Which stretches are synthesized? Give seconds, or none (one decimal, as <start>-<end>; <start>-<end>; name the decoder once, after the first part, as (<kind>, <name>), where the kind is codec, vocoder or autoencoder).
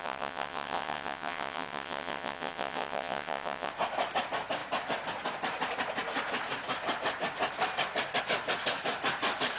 0.0-3.7 (vocoder, WaveNeXt)